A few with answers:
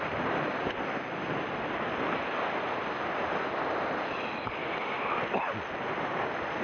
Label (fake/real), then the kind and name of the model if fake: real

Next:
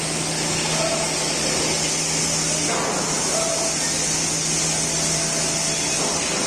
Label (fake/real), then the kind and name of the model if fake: real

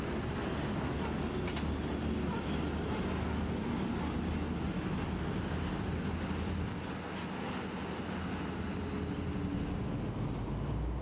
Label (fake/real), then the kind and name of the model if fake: real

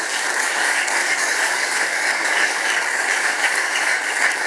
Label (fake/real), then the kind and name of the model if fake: fake, codec, DAC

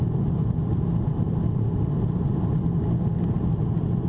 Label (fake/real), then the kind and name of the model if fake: real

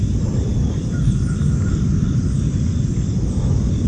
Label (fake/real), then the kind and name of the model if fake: real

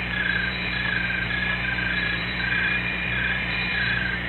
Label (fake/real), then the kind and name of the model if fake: fake, vocoder, BigVGAN v2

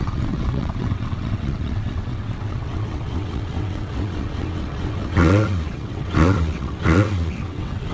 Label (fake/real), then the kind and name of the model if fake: fake, vocoder, WaveNeXt